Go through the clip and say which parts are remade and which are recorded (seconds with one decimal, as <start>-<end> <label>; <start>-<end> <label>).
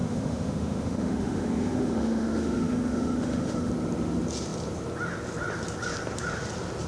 0.0-3.7 remade; 3.7-6.9 recorded